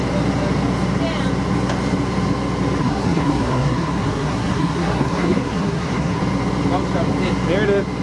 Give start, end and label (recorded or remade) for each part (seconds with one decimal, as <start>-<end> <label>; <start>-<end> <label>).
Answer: 0.0-2.8 recorded; 2.8-6.2 remade; 6.2-8.0 recorded